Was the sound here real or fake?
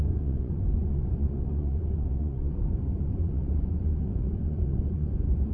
fake